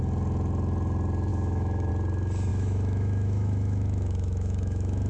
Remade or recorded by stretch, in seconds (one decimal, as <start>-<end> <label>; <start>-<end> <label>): 0.0-1.3 recorded; 1.3-1.9 remade; 1.9-2.5 recorded; 2.5-5.1 remade